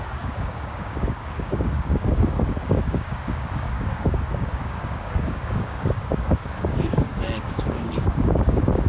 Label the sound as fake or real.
fake